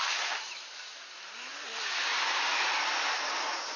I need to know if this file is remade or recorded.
recorded